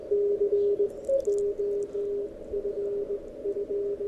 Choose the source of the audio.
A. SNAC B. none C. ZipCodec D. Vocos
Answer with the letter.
B